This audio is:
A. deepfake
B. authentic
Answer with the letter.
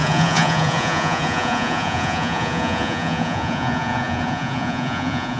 A